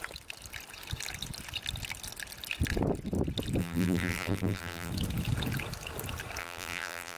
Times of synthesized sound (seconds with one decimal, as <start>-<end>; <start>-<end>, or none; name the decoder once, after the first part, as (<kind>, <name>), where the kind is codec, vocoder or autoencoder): 3.6-4.9 (vocoder, BigVGAN v2); 6.4-7.2